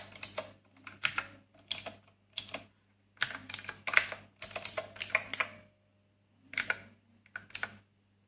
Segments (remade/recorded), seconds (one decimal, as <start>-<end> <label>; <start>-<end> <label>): 0.0-8.3 recorded